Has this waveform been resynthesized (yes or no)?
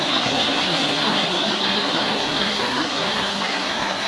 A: yes